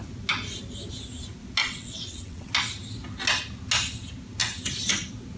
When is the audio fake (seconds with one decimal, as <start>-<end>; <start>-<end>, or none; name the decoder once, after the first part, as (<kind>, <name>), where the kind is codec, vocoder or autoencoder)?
1.6-2.5 (vocoder, WaveNeXt)